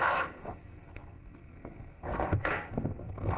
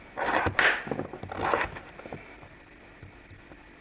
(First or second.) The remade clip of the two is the first